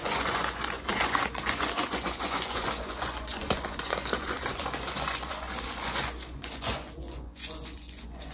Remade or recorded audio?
remade